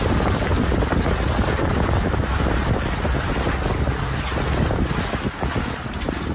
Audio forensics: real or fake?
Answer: real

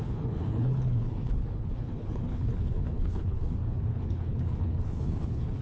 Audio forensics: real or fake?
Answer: fake